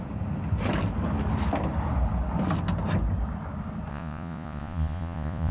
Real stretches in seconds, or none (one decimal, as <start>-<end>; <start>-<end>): 0.0-3.9